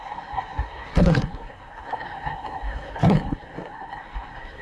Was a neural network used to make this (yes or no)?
yes